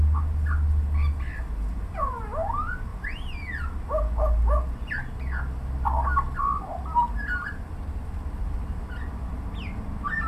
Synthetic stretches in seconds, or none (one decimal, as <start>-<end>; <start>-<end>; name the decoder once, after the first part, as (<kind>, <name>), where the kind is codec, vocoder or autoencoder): none

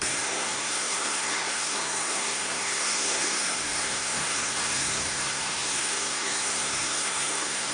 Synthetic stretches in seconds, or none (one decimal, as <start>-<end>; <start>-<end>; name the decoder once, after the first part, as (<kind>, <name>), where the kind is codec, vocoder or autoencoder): 0.0-7.7 (codec, SNAC)

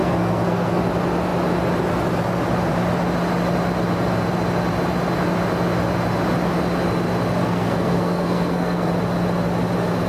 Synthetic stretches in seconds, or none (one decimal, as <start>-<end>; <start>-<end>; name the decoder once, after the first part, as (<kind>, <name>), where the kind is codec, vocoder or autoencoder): 0.0-0.8 (codec, SNAC); 7.4-8.9

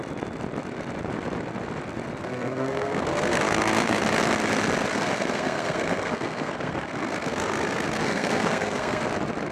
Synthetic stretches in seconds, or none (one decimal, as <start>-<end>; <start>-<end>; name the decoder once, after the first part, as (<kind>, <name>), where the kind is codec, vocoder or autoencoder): 2.2-4.0 (codec, SNAC); 4.9-9.0

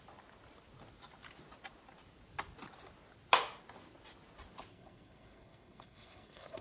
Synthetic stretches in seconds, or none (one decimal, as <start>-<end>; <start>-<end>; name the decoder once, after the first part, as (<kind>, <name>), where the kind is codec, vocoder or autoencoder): 4.7-6.6 (codec, SNAC)

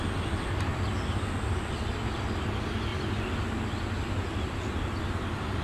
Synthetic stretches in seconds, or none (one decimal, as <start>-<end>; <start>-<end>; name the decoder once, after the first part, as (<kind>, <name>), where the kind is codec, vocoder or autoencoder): none

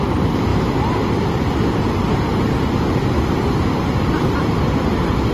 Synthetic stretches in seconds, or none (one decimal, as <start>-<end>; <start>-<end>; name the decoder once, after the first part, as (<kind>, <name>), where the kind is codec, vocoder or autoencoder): none